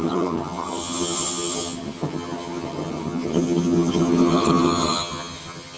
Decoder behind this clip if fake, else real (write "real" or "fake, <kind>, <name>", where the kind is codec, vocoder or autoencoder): fake, vocoder, HiFi-GAN